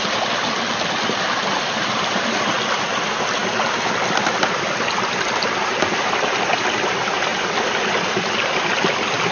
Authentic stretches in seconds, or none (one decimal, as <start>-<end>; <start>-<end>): 0.0-9.3